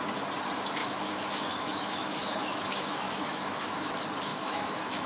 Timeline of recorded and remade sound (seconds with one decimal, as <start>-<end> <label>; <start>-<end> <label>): 0.0-0.8 recorded; 0.8-3.9 remade; 3.9-4.3 recorded; 4.3-5.1 remade